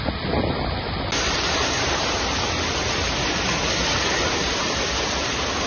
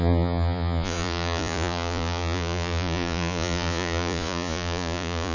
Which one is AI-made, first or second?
second